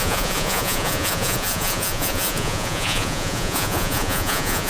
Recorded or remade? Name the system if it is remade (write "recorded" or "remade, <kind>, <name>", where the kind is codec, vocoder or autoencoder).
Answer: remade, vocoder, Vocos